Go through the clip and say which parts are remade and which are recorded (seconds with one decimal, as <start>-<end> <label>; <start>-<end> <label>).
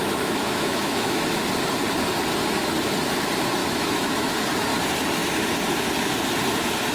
0.0-1.4 remade; 1.4-3.6 recorded; 3.6-4.3 remade; 4.3-6.9 recorded